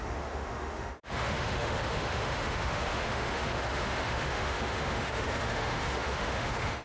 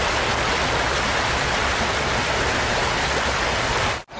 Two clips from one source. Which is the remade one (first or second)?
first